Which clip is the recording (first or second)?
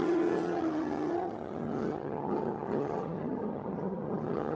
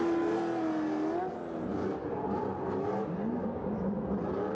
second